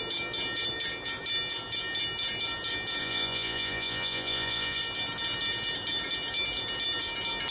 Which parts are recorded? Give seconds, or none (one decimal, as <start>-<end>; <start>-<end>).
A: 0.0-3.0; 4.8-7.5